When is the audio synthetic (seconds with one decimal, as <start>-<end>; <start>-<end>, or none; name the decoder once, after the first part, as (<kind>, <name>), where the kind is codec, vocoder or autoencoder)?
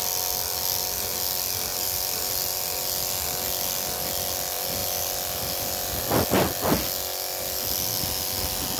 1.7-2.3 (vocoder, BigVGAN v2); 4.8-6.0